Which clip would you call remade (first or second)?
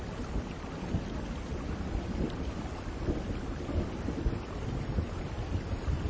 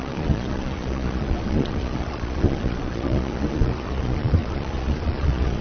second